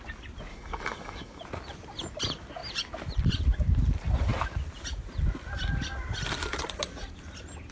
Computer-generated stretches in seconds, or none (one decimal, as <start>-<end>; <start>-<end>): 0.5-1.4